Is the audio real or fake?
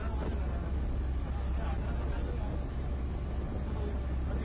real